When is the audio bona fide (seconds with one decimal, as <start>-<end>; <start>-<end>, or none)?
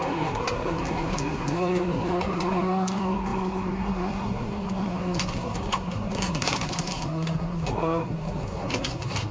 none